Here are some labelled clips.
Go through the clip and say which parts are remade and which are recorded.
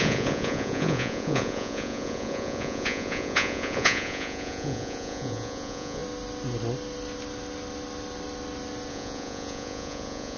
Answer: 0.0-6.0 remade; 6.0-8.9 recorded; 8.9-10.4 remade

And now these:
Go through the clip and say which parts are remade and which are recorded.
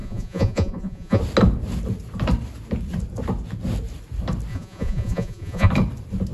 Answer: 0.0-1.2 remade; 1.2-4.5 recorded; 4.5-5.7 remade; 5.7-6.3 recorded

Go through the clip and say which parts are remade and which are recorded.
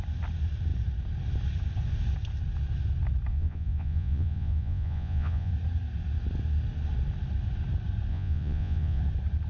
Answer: 0.0-3.3 recorded; 3.3-5.5 remade; 5.5-8.1 recorded; 8.1-9.0 remade; 9.0-9.5 recorded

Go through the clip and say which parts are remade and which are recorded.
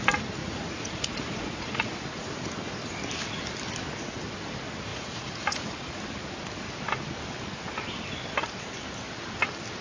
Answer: 0.0-0.4 recorded; 0.4-1.9 remade; 1.9-4.9 recorded; 4.9-6.0 remade; 6.0-9.8 recorded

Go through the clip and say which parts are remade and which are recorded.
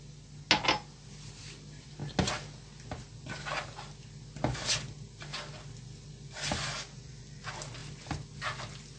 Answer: 0.0-9.0 recorded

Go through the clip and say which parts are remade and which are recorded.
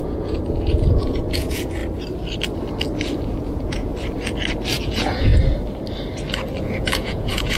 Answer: 0.0-1.8 remade; 1.8-3.2 recorded; 3.2-3.9 remade; 3.9-4.8 recorded; 4.8-5.3 remade; 5.3-6.6 recorded; 6.6-7.6 remade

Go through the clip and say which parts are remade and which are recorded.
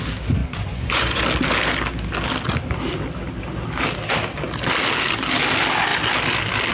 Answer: 0.0-0.4 recorded; 0.4-1.2 remade; 1.2-6.7 recorded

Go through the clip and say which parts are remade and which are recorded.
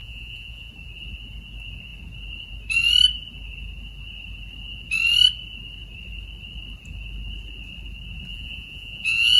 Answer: 0.0-0.7 remade; 0.7-8.3 recorded; 8.3-9.4 remade